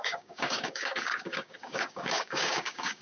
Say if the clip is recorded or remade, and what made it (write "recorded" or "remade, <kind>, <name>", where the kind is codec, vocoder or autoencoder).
remade, codec, DAC